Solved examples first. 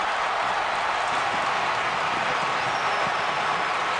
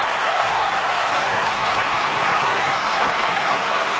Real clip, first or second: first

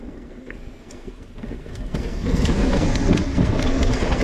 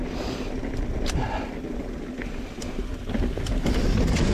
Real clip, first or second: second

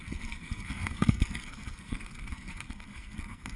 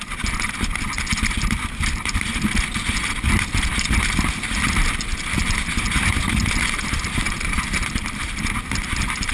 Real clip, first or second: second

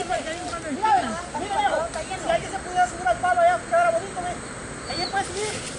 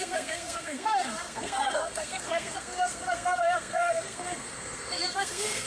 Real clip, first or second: first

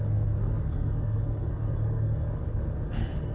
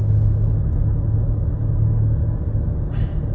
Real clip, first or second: second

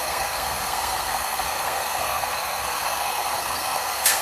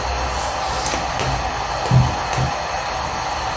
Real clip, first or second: second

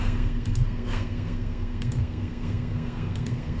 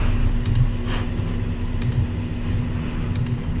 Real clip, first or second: second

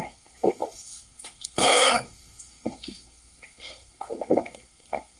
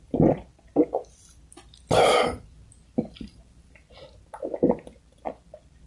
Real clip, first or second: second